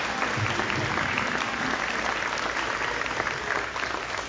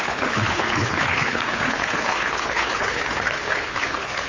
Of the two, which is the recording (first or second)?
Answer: first